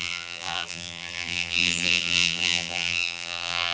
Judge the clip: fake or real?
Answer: fake